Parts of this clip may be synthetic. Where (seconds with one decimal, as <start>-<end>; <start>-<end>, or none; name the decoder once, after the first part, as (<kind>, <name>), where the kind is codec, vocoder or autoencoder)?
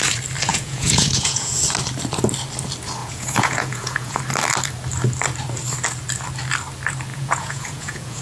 0.5-1.6 (vocoder, Vocos); 3.0-4.2; 7.1-8.2